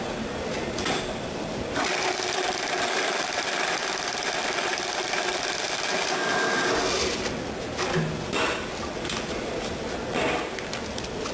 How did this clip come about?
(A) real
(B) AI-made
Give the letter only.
A